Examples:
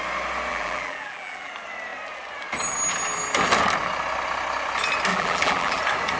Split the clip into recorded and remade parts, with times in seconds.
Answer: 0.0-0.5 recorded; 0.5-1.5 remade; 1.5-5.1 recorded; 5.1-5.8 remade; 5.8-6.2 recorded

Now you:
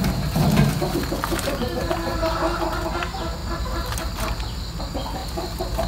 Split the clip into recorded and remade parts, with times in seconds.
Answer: 0.0-1.3 recorded; 1.3-2.2 remade; 2.2-5.9 recorded

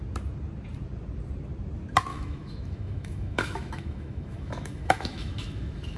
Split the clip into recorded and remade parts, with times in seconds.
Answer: 0.0-2.1 recorded; 2.1-6.0 remade

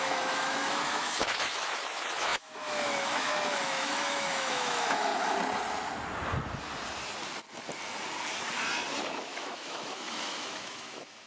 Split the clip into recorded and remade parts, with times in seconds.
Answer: 0.0-5.1 remade; 5.1-9.2 recorded; 9.2-11.3 remade